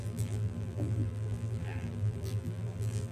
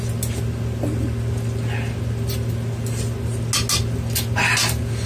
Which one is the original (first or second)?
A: second